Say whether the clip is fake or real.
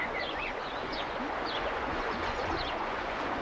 fake